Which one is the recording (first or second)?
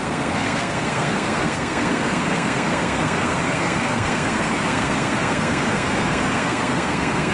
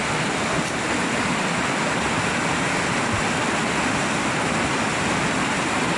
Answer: second